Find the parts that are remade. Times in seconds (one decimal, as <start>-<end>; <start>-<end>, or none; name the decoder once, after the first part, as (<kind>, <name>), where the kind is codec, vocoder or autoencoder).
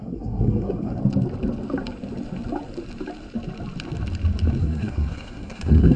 0.0-1.0 (codec, SNAC); 4.6-6.0